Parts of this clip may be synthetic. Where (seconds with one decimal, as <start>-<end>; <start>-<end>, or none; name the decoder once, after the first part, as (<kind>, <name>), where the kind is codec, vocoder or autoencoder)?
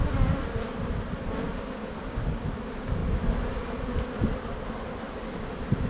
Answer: none